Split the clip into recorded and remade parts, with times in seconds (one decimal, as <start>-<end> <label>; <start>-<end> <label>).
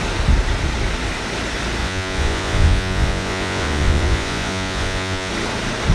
0.0-1.8 recorded; 1.8-5.3 remade; 5.3-5.9 recorded